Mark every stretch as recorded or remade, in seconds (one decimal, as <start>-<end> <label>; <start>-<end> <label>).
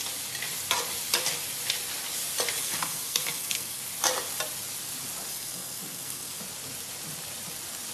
0.0-2.6 recorded; 2.6-3.8 remade; 3.8-5.3 recorded; 5.3-6.4 remade; 6.4-7.9 recorded